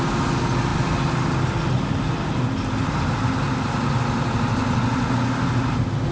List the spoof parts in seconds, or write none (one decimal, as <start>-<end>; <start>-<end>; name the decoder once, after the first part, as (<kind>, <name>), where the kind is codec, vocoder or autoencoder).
none